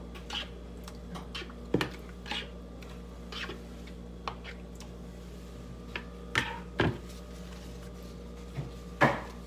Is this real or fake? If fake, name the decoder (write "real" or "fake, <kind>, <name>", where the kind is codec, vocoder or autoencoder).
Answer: real